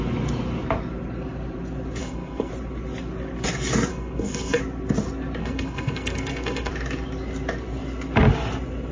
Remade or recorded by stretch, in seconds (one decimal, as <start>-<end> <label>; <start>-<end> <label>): 0.0-2.0 recorded; 2.0-2.5 remade; 2.5-3.9 recorded; 3.9-4.6 remade; 4.6-5.4 recorded; 5.4-6.7 remade; 6.7-8.9 recorded